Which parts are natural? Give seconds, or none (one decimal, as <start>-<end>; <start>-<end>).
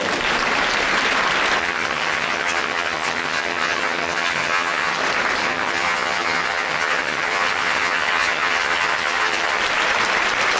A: 0.0-1.6; 5.0-5.4; 9.6-10.6